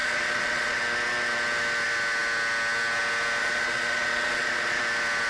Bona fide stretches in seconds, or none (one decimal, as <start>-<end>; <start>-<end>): 0.8-3.4; 4.8-5.3